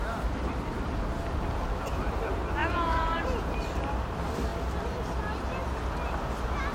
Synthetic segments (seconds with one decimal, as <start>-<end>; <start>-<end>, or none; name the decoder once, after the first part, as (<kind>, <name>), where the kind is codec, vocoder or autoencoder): 2.6-3.5 (vocoder, Vocos)